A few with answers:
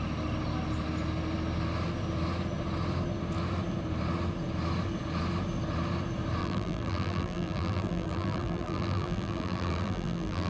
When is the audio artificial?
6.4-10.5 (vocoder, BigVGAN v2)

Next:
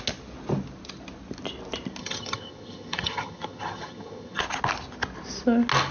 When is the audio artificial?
2.0-4.4 (vocoder, HiFi-GAN)